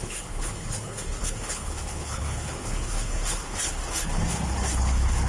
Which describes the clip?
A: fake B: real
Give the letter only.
A